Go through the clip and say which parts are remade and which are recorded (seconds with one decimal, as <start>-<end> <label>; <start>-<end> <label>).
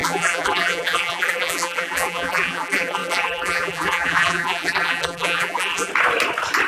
0.0-5.9 remade; 5.9-6.7 recorded